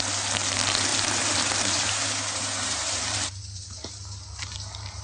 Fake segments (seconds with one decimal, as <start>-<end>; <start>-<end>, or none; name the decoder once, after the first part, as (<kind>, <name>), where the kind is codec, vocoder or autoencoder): 0.9-3.9 (vocoder, BigVGAN v2)